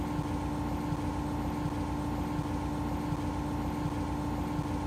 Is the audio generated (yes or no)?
no